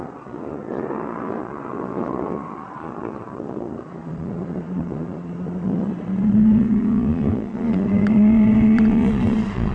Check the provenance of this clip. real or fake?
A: fake